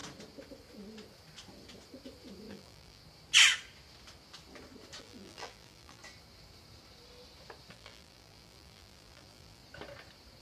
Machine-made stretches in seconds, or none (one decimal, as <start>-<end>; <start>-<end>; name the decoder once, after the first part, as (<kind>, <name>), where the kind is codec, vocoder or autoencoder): 2.5-3.0 (vocoder, BigVGAN v2); 5.0-6.0; 7.7-9.6